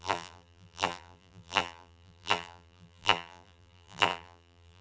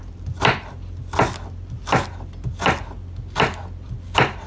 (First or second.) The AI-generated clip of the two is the first